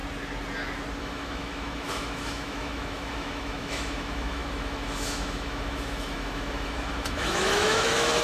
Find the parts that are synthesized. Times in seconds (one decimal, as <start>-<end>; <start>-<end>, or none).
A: 1.0-8.2